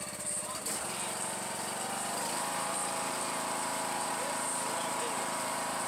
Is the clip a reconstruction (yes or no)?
yes